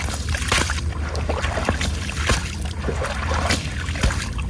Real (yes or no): yes